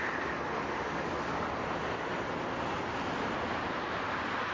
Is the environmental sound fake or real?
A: real